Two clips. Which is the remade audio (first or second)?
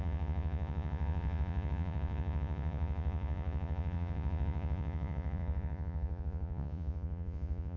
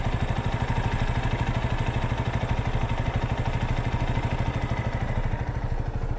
first